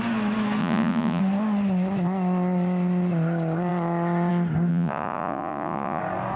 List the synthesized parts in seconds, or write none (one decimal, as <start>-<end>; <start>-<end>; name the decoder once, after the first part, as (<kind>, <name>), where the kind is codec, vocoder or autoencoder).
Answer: 0.6-1.2 (vocoder, Vocos); 4.7-6.0